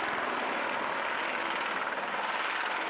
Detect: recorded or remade recorded